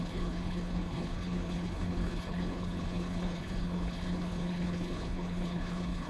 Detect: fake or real fake